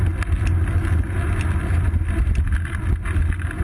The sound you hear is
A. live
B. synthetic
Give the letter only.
A